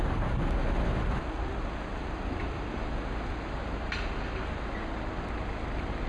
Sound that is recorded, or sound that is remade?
recorded